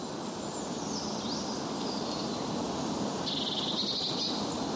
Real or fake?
real